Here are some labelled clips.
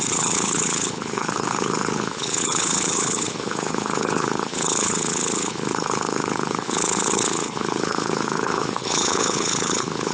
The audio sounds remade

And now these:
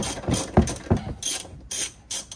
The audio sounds recorded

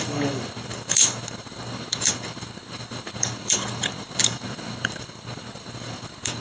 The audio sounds remade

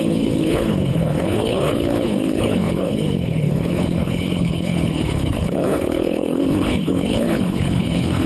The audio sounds remade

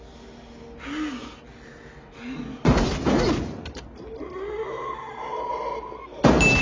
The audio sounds recorded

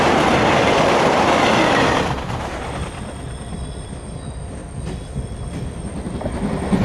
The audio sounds recorded